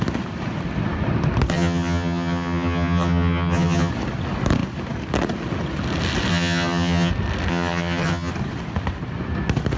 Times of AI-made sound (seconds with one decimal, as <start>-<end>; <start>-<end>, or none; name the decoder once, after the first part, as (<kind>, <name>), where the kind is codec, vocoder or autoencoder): 1.5-3.9 (vocoder, HiFi-GAN); 6.3-7.1; 7.5-8.3